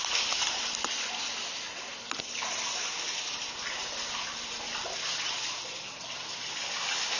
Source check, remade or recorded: recorded